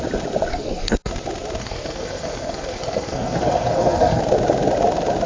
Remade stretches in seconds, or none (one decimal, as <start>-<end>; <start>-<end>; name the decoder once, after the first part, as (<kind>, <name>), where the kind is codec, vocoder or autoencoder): 0.5-1.1 (codec, SNAC); 1.6-4.2